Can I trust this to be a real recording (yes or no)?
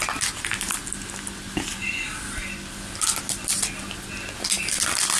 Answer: yes